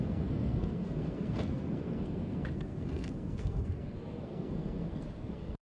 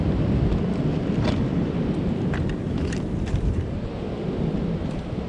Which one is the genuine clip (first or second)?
second